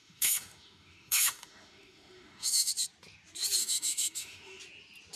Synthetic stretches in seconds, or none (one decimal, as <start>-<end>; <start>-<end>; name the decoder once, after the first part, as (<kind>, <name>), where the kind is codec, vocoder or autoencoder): 0.0-2.7 (autoencoder, DAC-VAE); 3.6-4.6